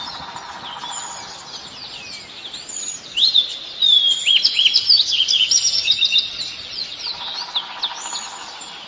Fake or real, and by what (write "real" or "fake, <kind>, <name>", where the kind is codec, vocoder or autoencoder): real